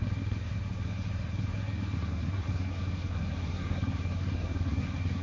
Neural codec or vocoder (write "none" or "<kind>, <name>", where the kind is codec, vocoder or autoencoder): codec, SNAC